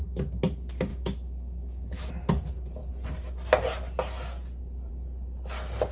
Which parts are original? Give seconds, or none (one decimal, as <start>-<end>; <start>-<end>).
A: 0.0-0.9; 2.1-5.9

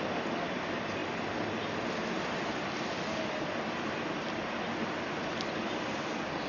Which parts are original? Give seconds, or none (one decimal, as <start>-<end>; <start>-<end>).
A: 1.0-1.8

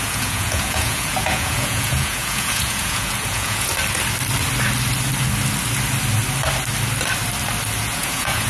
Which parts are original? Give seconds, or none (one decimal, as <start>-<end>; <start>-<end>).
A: 3.7-7.8

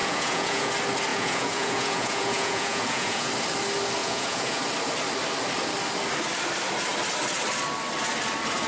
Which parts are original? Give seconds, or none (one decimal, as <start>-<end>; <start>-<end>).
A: 0.7-1.1; 3.3-4.0; 4.6-8.7

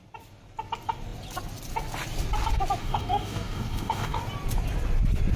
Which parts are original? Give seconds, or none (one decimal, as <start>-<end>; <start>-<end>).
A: 0.0-2.8; 4.2-5.4

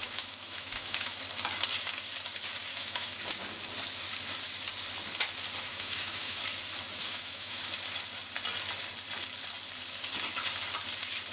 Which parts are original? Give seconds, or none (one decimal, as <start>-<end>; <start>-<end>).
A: 1.2-2.7; 3.2-5.7; 6.4-7.0; 7.6-11.3

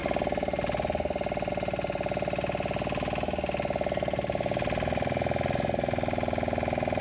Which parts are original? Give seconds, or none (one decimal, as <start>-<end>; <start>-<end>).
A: 0.0-7.0